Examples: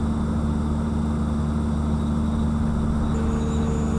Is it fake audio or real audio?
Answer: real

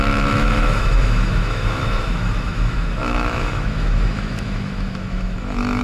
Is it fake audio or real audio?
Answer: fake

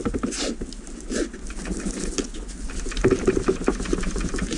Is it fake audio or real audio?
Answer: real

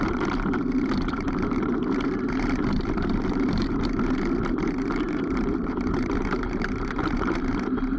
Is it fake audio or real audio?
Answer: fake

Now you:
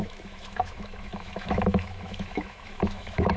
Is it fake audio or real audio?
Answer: fake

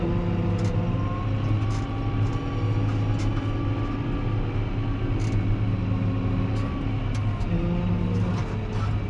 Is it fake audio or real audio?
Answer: real